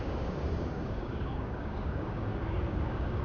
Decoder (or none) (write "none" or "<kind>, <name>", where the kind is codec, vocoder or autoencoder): codec, DAC